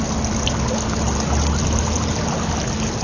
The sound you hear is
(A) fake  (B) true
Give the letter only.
B